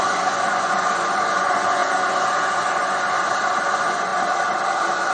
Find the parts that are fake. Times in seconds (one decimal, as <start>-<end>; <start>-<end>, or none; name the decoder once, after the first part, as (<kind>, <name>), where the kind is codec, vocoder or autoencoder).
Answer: 0.0-4.1 (vocoder, Vocos)